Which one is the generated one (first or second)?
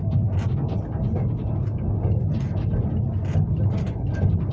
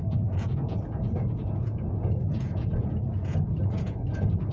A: second